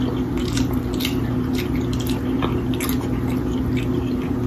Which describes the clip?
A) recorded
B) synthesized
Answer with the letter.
A